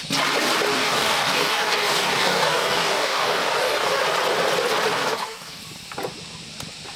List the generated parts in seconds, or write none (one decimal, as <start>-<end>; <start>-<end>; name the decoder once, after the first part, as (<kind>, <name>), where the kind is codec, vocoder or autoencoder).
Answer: 0.7-4.0 (codec, DAC); 4.9-5.6